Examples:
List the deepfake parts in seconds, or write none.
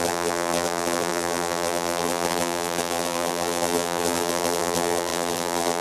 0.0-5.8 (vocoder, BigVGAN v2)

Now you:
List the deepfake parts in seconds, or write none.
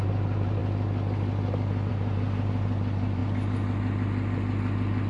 0.0-0.6 (vocoder, BigVGAN v2); 1.9-3.2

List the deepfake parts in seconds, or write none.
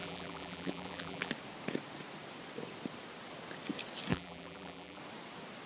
0.0-1.3 (vocoder, BigVGAN v2); 4.1-5.0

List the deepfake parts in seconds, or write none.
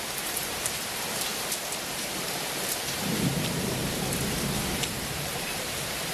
0.0-1.3 (vocoder, BigVGAN v2); 2.0-6.1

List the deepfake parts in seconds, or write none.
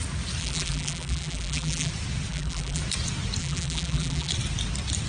0.4-1.9 (vocoder, BigVGAN v2); 2.3-2.8; 3.4-4.3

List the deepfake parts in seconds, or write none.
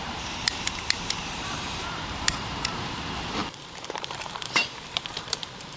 0.0-5.8 (vocoder, BigVGAN v2)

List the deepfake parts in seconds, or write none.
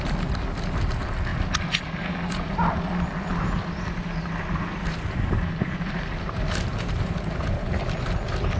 3.3-8.2 (vocoder, BigVGAN v2)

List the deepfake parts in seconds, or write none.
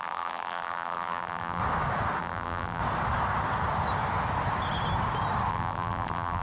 0.0-1.6 (vocoder, BigVGAN v2); 2.2-2.8; 5.5-6.4